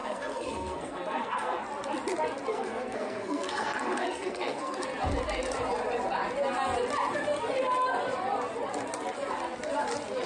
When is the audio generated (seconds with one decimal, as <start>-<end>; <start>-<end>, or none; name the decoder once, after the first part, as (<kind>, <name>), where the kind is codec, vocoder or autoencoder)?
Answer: 0.0-1.6 (codec, SNAC); 2.5-4.8